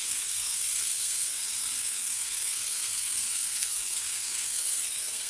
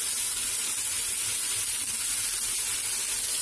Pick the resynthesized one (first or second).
first